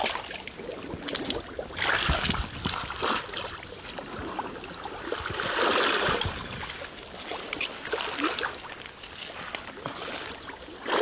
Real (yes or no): yes